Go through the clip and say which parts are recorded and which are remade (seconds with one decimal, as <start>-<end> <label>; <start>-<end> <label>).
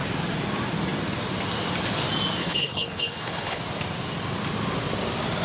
0.0-2.4 recorded; 2.4-3.6 remade; 3.6-5.4 recorded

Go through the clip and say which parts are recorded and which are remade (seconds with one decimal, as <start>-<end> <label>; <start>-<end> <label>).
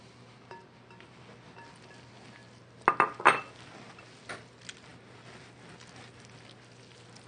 0.0-7.3 recorded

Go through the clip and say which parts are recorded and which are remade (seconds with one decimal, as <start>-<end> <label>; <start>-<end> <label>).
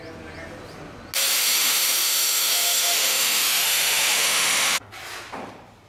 0.0-1.4 recorded; 1.4-4.9 remade; 4.9-5.9 recorded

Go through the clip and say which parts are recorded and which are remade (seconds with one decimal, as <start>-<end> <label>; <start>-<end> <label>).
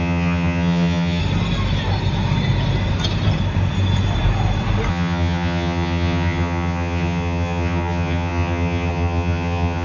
0.0-1.2 remade; 1.2-4.9 recorded; 4.9-9.8 remade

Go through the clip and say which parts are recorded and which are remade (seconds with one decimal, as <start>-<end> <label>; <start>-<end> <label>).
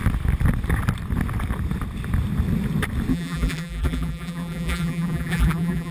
0.0-3.1 recorded; 3.1-5.9 remade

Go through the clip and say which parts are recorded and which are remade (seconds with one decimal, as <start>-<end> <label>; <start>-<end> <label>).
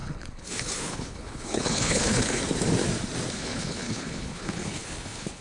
0.0-2.4 remade; 2.4-3.3 recorded; 3.3-5.4 remade